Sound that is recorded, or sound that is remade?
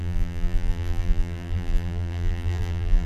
remade